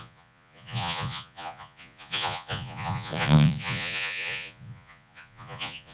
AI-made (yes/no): yes